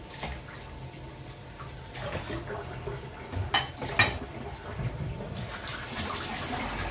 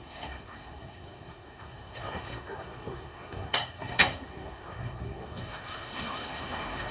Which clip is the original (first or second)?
first